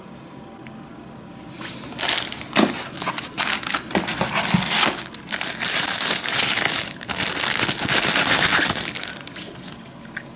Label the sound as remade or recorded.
recorded